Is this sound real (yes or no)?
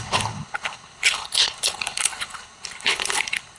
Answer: no